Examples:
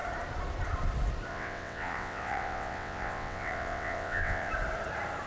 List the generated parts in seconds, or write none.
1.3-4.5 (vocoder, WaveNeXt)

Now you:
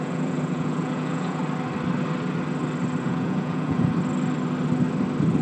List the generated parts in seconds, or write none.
0.0-1.4 (vocoder, Vocos); 3.0-3.9